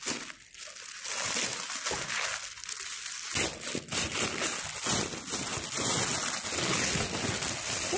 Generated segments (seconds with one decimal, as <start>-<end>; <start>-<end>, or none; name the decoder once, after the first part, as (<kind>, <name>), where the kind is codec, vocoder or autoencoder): none